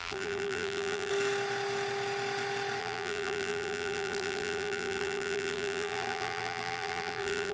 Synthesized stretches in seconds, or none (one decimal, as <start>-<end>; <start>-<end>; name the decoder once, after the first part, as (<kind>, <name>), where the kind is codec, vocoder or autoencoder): 0.0-1.1 (vocoder, BigVGAN v2); 2.8-7.5